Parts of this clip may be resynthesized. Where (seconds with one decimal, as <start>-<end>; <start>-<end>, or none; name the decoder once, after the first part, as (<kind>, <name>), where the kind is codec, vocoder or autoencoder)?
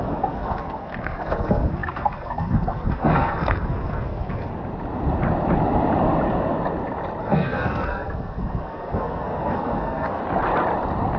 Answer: 0.0-4.5 (codec, SNAC); 7.2-10.2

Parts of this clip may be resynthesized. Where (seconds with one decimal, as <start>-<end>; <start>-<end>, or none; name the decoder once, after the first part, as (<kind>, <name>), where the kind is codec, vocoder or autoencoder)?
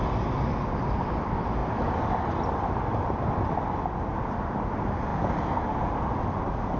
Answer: none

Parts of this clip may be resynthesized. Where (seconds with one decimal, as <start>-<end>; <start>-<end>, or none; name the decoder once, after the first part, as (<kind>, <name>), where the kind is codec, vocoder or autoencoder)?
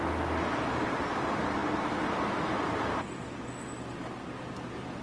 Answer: none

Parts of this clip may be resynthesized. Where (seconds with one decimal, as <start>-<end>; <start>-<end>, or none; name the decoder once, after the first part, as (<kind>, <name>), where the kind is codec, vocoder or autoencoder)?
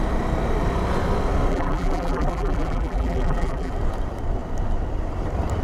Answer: 1.5-3.7 (vocoder, BigVGAN v2)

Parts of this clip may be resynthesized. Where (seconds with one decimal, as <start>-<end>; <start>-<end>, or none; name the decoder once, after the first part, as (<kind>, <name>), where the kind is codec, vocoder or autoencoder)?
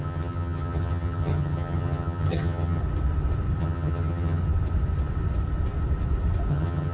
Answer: 0.0-2.8 (vocoder, HiFi-GAN); 3.6-4.4; 6.5-6.9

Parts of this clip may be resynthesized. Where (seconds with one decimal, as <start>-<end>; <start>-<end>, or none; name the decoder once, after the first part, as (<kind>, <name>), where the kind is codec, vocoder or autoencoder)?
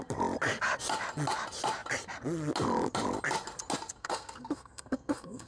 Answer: 4.0-5.5 (codec, SNAC)